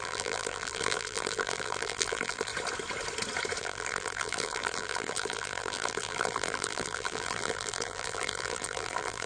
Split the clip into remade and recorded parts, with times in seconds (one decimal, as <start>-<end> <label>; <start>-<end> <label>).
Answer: 0.0-2.5 remade; 2.5-3.6 recorded; 3.6-9.3 remade